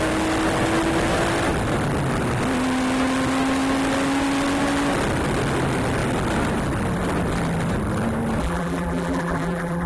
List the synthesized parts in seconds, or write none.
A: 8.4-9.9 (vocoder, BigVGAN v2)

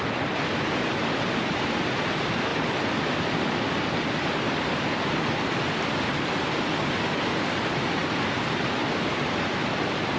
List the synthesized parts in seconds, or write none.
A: 2.5-3.3 (vocoder, BigVGAN v2)

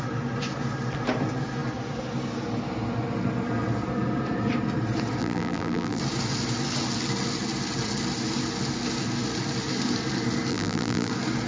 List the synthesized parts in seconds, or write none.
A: 5.2-6.0 (vocoder, BigVGAN v2); 10.5-11.1

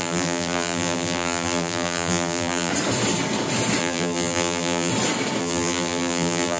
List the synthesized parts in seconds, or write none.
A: 0.0-2.7 (vocoder, BigVGAN v2); 3.8-4.9; 5.4-6.6

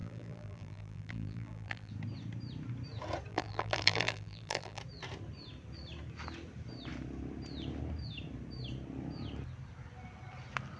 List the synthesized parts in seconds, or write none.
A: 0.0-1.9 (vocoder, BigVGAN v2); 3.3-4.8

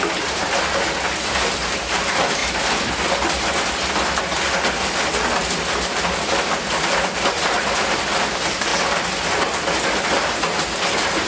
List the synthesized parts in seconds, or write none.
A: none

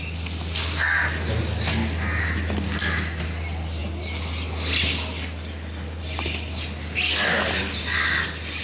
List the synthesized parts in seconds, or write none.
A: none

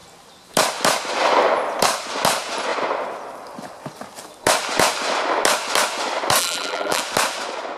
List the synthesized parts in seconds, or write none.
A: 6.4-7.0 (vocoder, BigVGAN v2)